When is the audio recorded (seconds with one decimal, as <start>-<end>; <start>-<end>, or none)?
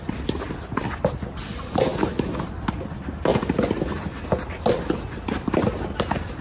0.0-6.4